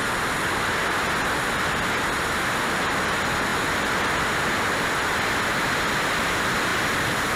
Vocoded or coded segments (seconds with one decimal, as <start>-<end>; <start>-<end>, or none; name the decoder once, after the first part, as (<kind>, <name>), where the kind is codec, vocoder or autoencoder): none